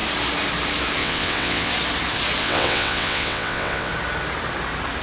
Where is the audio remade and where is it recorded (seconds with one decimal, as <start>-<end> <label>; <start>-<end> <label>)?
0.0-1.0 recorded; 1.0-1.7 remade; 1.7-2.4 recorded; 2.4-3.9 remade; 3.9-5.0 recorded